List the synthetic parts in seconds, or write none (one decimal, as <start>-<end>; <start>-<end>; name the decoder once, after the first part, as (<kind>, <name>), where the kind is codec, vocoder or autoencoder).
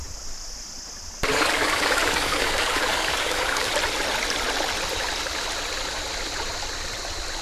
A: 1.3-3.7 (codec, DAC)